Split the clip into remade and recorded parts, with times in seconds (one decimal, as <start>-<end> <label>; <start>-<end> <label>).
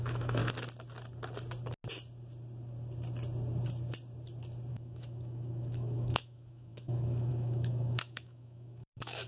0.0-0.4 remade; 0.4-4.7 recorded; 4.7-9.3 remade